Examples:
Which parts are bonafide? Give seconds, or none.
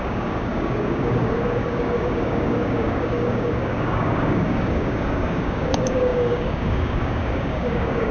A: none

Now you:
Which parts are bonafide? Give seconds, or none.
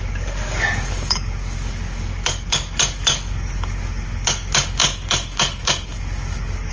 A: none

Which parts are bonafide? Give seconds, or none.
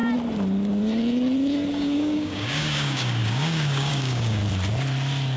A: 0.0-1.7; 4.4-5.4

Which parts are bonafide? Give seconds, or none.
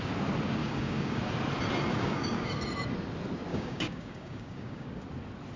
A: 0.0-0.6; 1.2-1.9; 2.5-3.5; 5.0-5.6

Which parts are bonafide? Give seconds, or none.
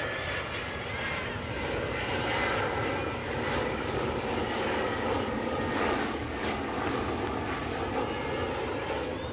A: 0.0-3.2; 7.1-9.3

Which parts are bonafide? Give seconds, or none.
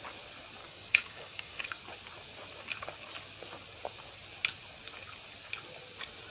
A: 0.0-0.6; 1.8-6.3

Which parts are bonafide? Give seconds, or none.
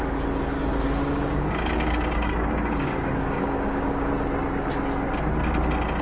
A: 0.0-0.5; 4.1-6.0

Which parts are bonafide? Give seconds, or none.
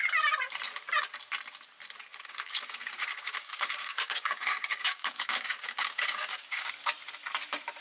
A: 0.0-2.1; 6.7-7.8